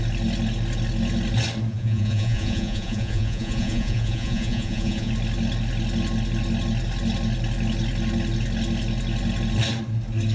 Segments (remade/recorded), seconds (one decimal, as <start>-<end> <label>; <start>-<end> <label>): 0.0-1.7 recorded; 1.7-5.1 remade; 5.1-10.3 recorded